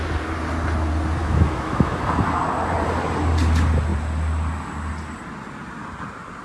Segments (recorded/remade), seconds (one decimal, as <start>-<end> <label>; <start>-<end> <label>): 0.0-1.2 recorded; 1.2-2.0 remade; 2.0-6.4 recorded